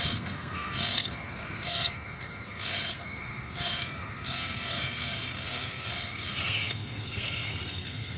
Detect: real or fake fake